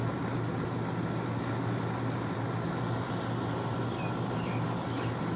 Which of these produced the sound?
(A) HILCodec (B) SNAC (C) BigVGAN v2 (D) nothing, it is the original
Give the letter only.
D